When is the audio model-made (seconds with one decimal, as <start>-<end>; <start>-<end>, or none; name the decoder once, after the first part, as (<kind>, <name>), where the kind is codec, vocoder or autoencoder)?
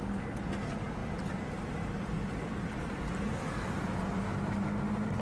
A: 1.0-3.9 (vocoder, BigVGAN v2)